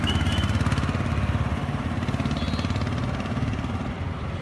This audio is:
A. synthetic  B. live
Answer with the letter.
B